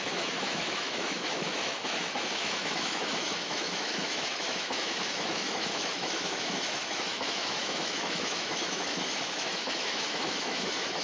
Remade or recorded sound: remade